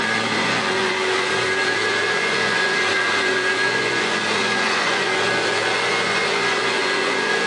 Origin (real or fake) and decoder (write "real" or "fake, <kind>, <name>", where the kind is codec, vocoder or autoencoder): fake, vocoder, Vocos